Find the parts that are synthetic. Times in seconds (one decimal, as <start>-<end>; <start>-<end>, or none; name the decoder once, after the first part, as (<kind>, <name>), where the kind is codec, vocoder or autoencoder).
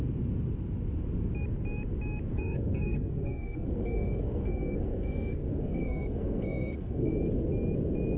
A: 2.3-7.1 (codec, SNAC)